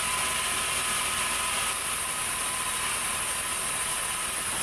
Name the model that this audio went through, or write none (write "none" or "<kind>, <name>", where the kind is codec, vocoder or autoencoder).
none